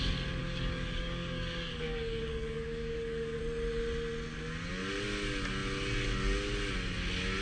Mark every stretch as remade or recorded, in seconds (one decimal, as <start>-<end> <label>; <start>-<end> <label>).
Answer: 0.0-0.4 recorded; 0.4-3.4 remade; 3.4-7.4 recorded